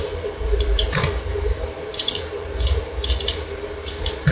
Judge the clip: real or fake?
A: fake